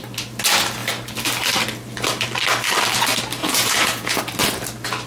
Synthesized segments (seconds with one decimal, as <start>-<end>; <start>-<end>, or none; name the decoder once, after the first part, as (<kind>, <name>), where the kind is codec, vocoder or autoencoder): 3.4-4.2 (vocoder, Vocos)